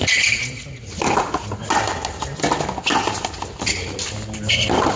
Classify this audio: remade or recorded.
recorded